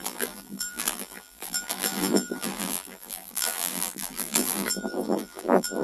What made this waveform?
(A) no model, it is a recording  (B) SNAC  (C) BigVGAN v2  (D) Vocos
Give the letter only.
C